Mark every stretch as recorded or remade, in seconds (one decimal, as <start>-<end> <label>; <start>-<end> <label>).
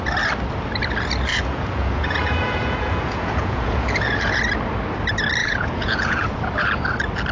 0.0-1.3 recorded; 1.3-4.4 remade; 4.4-5.4 recorded; 5.4-6.4 remade; 6.4-7.3 recorded